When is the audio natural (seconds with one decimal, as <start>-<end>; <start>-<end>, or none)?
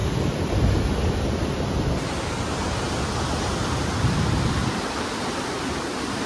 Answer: 0.0-4.6; 5.1-6.3